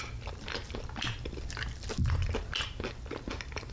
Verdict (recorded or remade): recorded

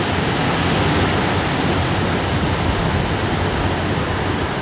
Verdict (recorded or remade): recorded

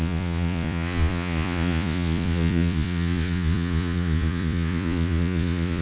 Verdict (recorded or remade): remade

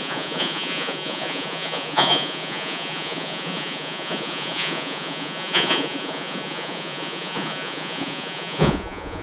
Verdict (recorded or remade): remade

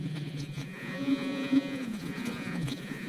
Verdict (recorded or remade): remade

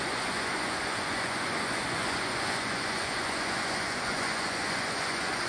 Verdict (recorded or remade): remade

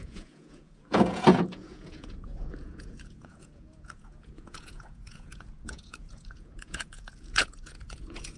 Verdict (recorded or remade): remade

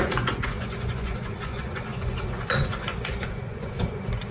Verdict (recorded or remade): remade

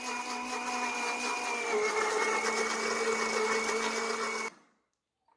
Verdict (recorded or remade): recorded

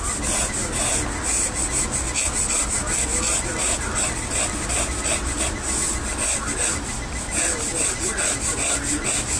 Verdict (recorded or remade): recorded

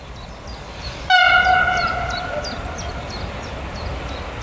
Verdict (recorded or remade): recorded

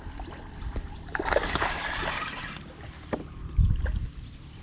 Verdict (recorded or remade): recorded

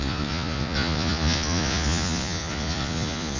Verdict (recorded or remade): remade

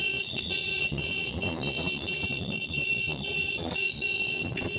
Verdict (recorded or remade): remade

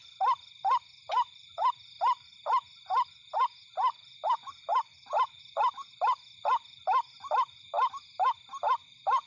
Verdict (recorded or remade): recorded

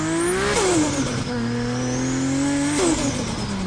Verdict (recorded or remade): recorded